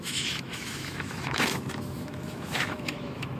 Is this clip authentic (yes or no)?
no